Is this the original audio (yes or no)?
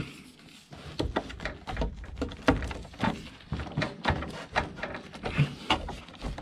yes